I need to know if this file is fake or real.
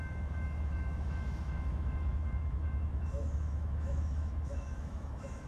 fake